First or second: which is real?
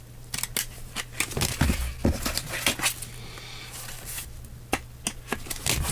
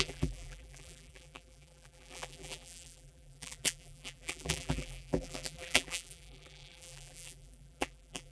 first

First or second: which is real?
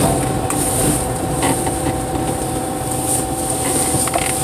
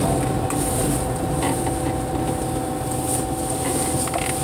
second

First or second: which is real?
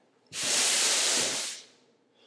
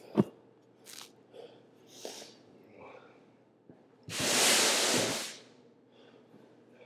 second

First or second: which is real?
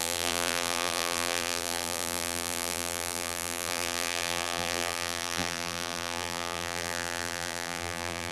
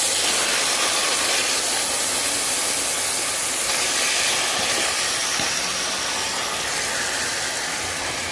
second